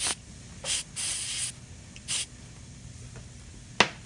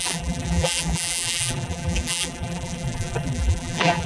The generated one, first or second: second